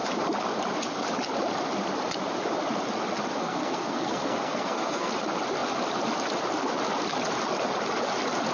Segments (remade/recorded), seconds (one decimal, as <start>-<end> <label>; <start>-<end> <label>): 0.0-3.4 recorded; 3.4-5.1 remade; 5.1-8.5 recorded